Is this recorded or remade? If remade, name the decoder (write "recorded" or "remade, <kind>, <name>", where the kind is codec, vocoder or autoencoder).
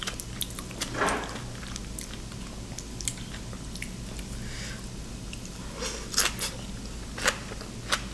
recorded